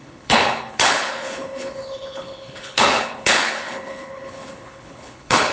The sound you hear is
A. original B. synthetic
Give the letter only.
B